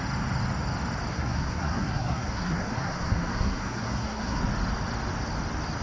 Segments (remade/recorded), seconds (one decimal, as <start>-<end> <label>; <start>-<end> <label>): 0.0-1.1 recorded; 1.1-4.4 remade; 4.4-5.8 recorded